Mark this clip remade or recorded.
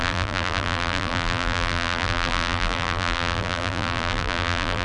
remade